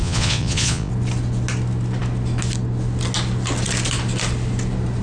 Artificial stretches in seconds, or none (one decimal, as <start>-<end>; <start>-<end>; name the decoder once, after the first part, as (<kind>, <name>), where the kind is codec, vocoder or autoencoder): 0.0-0.9 (vocoder, Vocos)